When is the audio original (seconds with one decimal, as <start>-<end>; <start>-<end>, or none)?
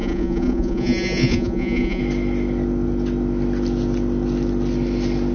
2.0-5.3